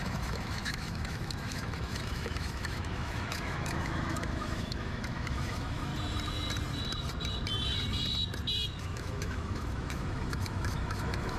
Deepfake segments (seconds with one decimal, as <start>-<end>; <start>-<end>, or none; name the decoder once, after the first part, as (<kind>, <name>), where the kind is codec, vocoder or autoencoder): 0.0-5.9 (autoencoder, DAC-VAE); 8.8-11.4